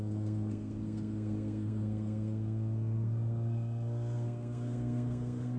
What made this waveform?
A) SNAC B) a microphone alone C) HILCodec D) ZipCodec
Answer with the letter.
A